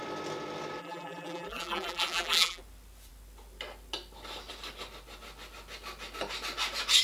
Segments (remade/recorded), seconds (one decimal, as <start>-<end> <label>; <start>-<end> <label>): 0.0-0.8 recorded; 0.8-2.6 remade; 2.6-7.0 recorded